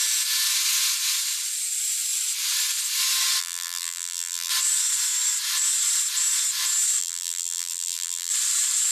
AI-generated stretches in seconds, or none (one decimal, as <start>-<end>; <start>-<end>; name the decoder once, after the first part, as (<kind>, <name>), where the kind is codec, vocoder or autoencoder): 3.4-4.5 (vocoder, BigVGAN v2); 7.0-8.3

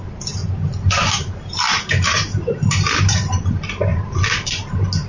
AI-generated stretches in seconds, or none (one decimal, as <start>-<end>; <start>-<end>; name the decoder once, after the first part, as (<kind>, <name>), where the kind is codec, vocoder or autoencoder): 0.4-3.5 (vocoder, BigVGAN v2)

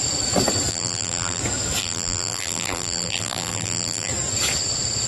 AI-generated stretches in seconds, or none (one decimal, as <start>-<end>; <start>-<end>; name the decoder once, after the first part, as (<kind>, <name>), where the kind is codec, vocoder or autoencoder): 0.7-1.4 (vocoder, BigVGAN v2); 1.8-4.1

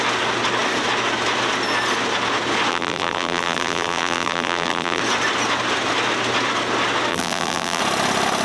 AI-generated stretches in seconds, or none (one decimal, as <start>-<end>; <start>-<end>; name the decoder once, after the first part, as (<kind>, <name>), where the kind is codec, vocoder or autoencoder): 2.7-5.0 (vocoder, BigVGAN v2); 7.1-7.8